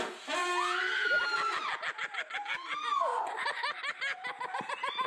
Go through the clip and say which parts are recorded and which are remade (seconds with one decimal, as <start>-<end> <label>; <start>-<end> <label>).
0.0-5.1 recorded